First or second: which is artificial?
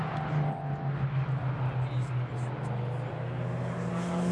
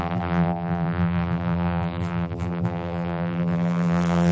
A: second